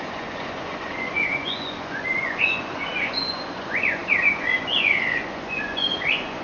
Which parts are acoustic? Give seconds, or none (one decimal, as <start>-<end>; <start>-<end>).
none